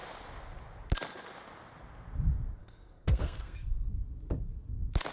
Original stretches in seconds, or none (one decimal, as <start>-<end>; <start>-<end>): 0.0-2.6; 3.9-5.1